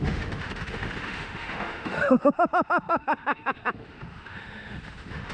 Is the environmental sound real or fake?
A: fake